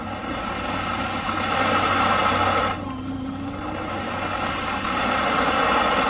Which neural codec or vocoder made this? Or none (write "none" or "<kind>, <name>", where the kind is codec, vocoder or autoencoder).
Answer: none